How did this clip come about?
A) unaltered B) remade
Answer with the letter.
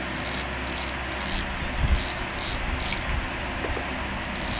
A